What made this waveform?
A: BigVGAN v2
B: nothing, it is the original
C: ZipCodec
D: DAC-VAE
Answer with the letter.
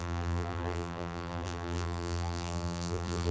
A